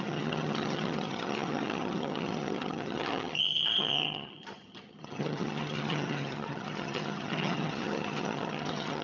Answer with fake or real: fake